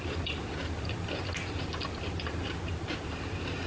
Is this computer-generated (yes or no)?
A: no